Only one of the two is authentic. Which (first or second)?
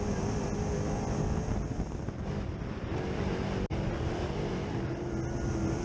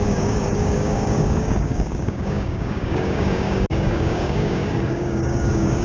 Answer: first